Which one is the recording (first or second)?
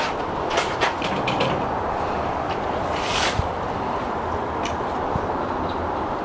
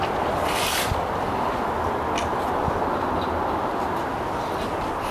second